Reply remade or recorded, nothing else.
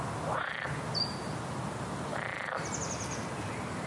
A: recorded